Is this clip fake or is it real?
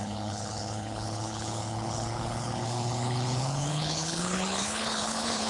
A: fake